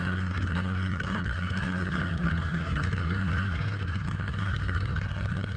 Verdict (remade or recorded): remade